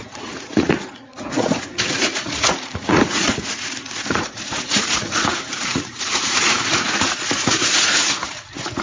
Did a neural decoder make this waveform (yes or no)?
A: yes